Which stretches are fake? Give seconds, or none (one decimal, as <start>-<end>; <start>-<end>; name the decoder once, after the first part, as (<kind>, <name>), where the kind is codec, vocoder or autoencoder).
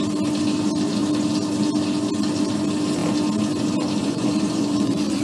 4.0-5.2 (vocoder, Vocos)